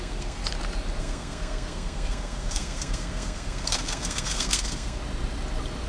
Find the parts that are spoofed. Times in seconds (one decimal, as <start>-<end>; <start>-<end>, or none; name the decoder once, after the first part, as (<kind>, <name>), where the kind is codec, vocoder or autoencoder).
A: 0.0-0.4 (codec, SNAC); 1.0-5.0